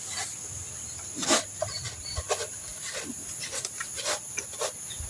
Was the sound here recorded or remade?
recorded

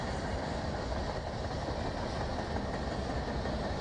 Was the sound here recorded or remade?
recorded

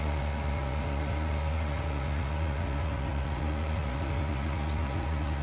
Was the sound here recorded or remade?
remade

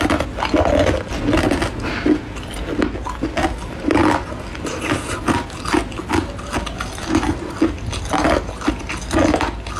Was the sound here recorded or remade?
recorded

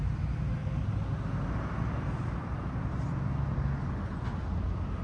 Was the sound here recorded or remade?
recorded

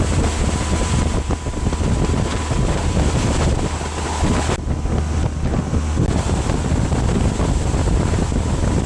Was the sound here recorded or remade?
recorded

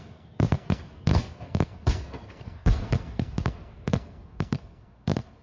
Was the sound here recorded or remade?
remade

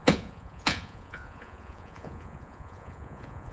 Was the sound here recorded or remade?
remade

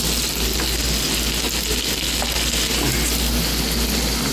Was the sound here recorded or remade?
recorded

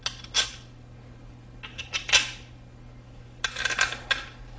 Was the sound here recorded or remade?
recorded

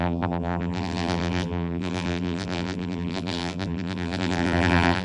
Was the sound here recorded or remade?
remade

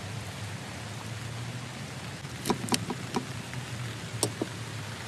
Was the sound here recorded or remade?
recorded